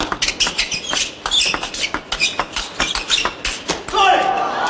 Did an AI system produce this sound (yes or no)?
no